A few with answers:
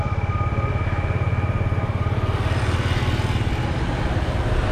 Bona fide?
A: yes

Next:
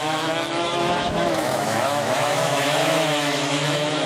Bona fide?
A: no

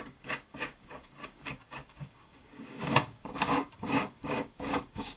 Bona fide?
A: no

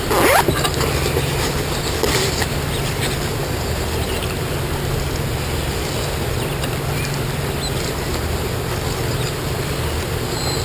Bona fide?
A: yes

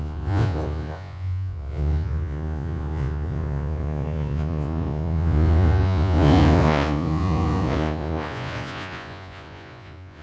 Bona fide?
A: no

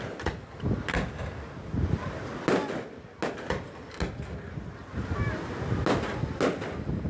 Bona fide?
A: yes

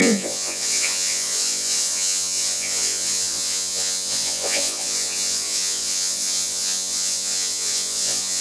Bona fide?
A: no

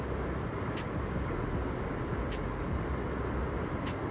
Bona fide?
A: yes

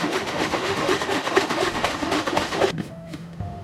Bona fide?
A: no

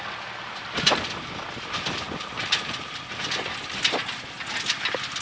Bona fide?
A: yes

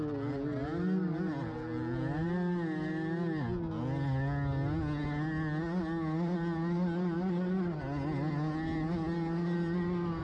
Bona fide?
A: yes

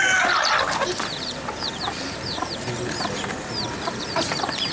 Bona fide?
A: no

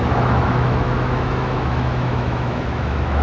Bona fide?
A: no